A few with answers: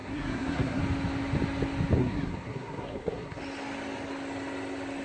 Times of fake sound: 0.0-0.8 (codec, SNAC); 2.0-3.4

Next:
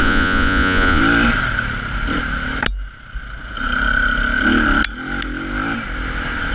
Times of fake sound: 0.0-1.0 (vocoder, Vocos)

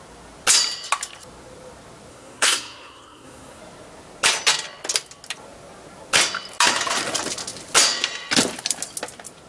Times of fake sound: 2.1-3.6 (codec, SNAC)